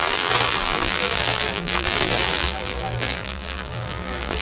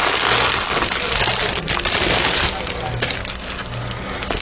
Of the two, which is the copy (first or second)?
first